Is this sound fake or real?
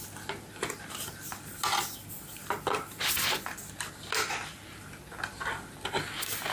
real